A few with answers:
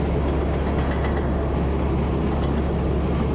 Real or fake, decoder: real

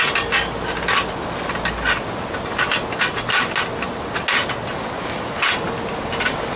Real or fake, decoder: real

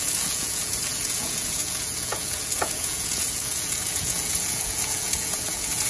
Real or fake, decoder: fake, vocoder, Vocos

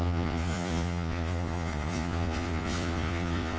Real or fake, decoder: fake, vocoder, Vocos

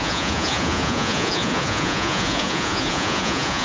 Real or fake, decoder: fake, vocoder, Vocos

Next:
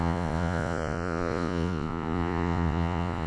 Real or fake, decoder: fake, vocoder, Vocos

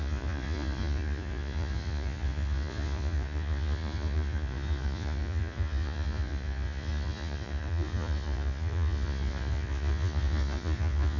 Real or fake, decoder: fake, vocoder, Vocos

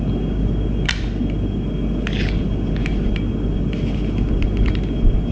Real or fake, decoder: real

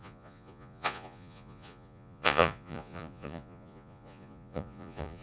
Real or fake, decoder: fake, vocoder, Vocos